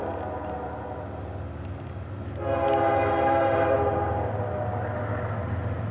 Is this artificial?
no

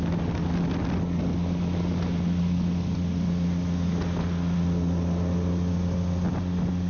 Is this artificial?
no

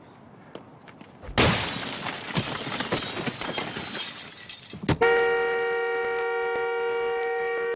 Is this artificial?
no